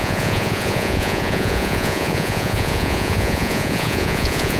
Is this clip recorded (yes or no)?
no